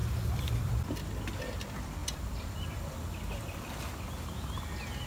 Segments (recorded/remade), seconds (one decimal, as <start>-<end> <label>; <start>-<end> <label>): 0.0-0.7 remade; 0.7-2.0 recorded; 2.0-3.6 remade; 3.6-5.1 recorded